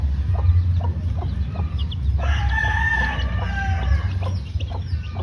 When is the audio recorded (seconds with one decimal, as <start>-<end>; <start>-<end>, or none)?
0.0-5.2